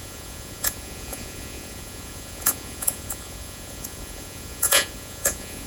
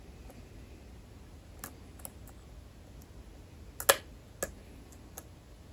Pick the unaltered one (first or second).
second